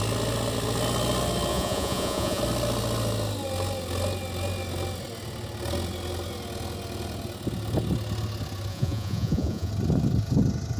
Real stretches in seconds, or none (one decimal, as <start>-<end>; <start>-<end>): 0.0-1.5; 2.4-8.7; 9.7-10.8